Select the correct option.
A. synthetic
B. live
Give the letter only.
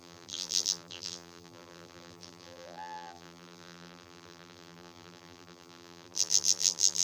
A